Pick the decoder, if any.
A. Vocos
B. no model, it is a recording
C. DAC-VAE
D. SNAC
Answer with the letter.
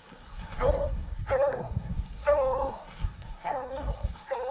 D